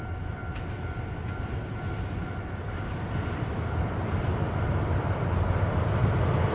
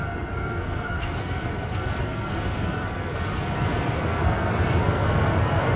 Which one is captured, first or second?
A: first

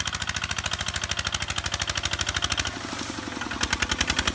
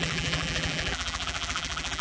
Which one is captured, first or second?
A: first